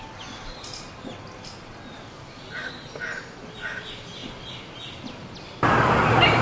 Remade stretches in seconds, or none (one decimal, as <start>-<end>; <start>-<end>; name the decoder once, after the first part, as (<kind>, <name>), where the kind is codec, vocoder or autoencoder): none